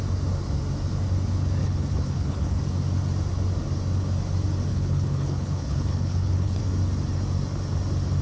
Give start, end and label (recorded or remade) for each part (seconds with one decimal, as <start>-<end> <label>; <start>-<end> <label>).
0.0-1.6 recorded; 1.6-2.6 remade; 2.6-4.7 recorded; 4.7-6.6 remade; 6.6-8.2 recorded